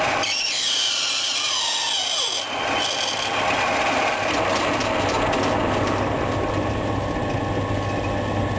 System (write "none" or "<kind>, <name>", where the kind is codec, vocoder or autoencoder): none